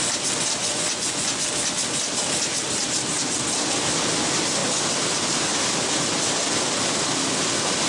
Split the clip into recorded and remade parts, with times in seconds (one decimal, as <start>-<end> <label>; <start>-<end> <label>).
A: 0.0-0.6 recorded; 0.6-1.5 remade; 1.5-7.9 recorded